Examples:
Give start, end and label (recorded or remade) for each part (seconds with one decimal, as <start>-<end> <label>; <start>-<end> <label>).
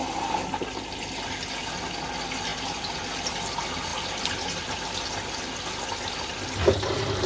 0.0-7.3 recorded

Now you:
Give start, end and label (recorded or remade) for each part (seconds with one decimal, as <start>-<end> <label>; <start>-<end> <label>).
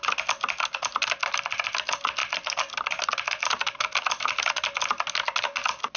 0.0-6.0 recorded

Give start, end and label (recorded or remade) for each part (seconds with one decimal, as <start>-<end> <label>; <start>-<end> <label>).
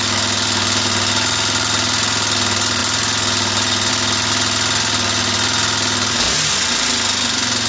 0.0-7.7 recorded